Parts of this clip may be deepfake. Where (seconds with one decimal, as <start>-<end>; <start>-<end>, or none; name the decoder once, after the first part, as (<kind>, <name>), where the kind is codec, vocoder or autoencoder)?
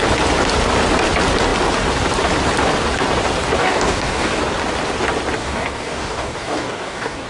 3.6-4.4 (codec, DAC); 5.4-7.3